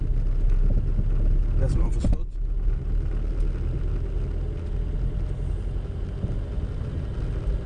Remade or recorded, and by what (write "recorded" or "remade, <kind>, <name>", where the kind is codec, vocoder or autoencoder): recorded